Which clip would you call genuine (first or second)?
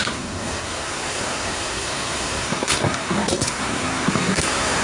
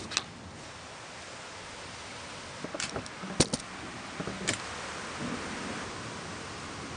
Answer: second